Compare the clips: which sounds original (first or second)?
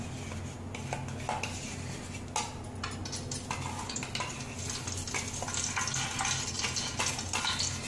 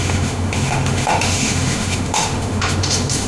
first